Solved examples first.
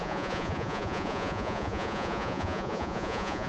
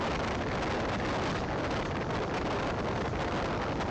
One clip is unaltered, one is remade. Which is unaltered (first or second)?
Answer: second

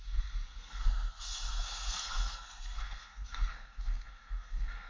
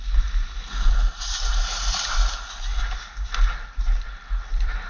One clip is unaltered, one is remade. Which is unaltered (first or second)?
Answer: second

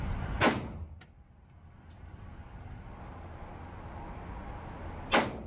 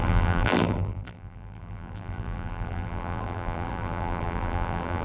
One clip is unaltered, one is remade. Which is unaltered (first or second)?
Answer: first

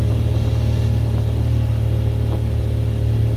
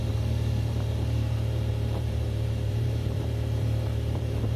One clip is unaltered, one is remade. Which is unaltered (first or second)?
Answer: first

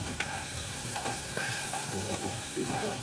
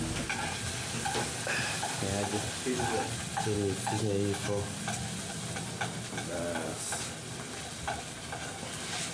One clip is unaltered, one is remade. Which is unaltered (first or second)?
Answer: second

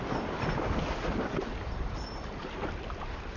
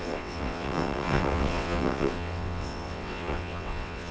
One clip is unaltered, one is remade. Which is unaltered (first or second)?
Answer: first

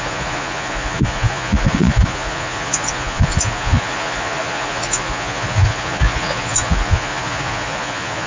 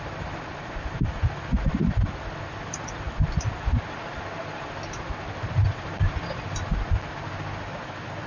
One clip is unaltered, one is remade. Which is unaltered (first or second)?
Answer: second